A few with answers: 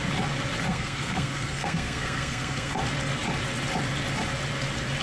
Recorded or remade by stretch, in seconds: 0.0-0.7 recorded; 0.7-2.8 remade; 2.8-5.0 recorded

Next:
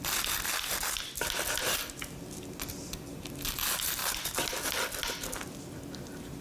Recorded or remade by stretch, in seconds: 0.0-6.4 recorded

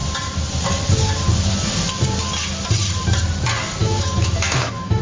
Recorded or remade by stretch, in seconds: 0.0-3.8 recorded; 3.8-5.0 remade

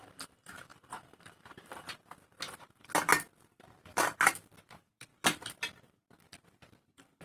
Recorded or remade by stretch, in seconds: 0.0-7.2 remade

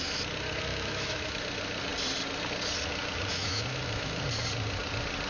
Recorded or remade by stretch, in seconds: 0.0-0.7 recorded; 0.7-1.4 remade; 1.4-3.3 recorded; 3.3-4.2 remade; 4.2-5.3 recorded